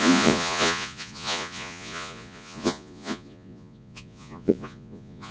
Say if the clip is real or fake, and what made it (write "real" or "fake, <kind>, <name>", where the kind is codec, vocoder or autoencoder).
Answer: fake, vocoder, Vocos